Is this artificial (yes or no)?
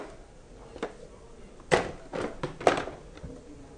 no